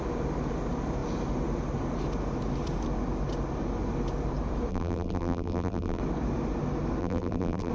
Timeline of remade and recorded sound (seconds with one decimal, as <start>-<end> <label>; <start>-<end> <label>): 0.0-4.7 recorded; 4.7-6.0 remade; 6.0-7.0 recorded; 7.0-7.7 remade